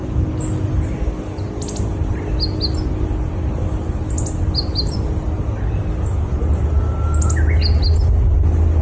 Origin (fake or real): real